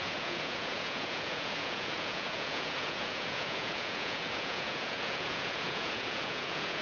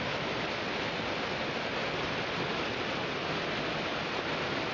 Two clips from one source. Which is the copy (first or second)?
first